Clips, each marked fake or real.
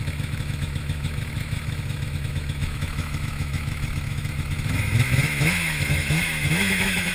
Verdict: fake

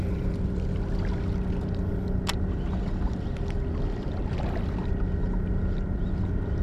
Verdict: real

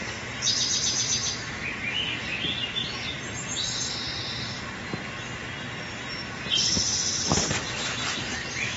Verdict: real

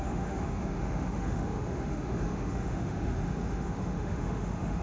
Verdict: fake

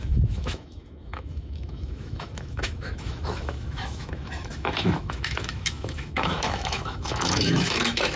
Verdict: fake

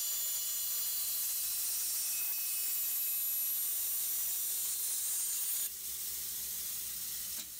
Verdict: real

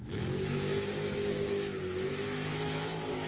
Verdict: fake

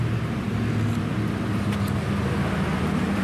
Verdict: real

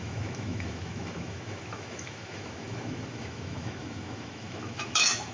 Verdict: fake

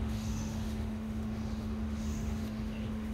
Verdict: fake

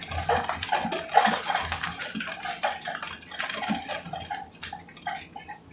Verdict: real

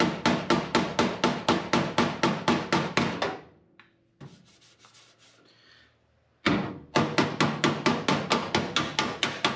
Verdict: real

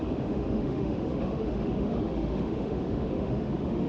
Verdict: fake